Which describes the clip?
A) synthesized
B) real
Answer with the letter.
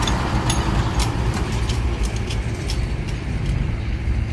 A